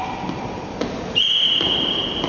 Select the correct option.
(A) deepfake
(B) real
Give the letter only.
A